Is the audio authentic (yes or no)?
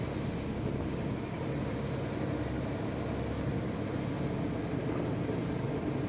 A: yes